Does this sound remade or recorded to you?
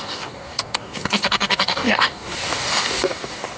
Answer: remade